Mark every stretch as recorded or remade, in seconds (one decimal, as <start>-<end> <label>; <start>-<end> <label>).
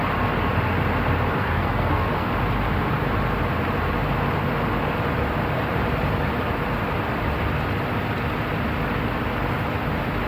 0.0-1.4 recorded; 1.4-2.3 remade; 2.3-10.3 recorded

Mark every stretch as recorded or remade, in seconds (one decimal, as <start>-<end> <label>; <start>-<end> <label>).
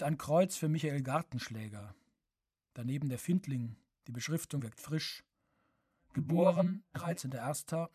0.0-6.0 recorded; 6.0-7.2 remade; 7.2-7.9 recorded